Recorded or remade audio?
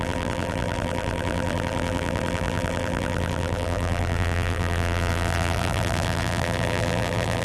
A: remade